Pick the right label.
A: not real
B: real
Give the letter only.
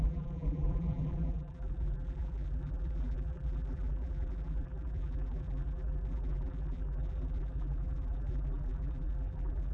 A